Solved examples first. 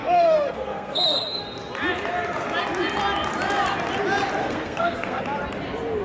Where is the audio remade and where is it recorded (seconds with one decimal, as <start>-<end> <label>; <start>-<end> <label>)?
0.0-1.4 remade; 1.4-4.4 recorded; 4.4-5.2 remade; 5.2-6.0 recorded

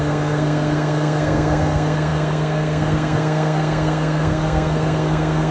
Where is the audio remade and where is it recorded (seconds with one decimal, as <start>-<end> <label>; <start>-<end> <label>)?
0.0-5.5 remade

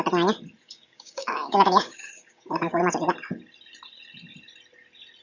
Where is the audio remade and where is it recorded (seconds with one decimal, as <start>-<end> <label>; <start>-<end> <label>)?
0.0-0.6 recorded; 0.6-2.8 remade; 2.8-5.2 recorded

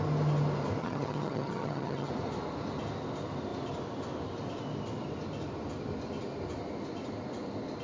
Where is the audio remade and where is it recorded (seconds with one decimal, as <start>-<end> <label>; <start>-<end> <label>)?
0.0-0.8 recorded; 0.8-2.1 remade; 2.1-7.8 recorded

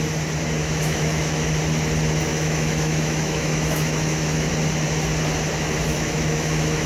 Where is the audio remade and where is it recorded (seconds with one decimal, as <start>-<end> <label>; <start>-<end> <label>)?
0.0-0.6 recorded; 0.6-1.5 remade; 1.5-2.3 recorded; 2.3-4.5 remade; 4.5-5.9 recorded; 5.9-6.9 remade

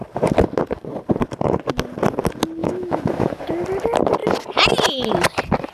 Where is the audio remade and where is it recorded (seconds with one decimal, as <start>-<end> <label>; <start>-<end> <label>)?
0.0-2.6 recorded; 2.6-3.4 remade; 3.4-5.7 recorded